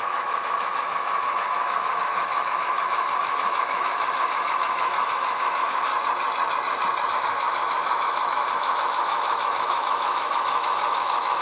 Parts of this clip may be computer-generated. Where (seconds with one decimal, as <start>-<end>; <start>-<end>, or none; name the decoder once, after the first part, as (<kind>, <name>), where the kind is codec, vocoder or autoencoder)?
0.0-5.9 (autoencoder, DAC-VAE); 7.1-11.4